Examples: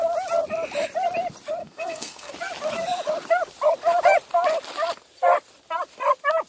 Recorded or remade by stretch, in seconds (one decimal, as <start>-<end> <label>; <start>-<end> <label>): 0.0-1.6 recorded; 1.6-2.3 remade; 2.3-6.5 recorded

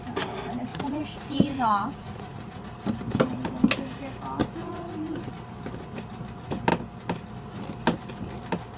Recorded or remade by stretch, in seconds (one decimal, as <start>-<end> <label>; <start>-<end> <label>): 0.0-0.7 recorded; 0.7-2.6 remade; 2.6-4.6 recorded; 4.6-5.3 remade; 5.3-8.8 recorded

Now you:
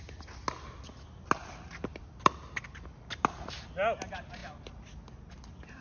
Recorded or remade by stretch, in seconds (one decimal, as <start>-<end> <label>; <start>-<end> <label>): 0.0-1.4 recorded; 1.4-2.6 remade; 2.6-5.8 recorded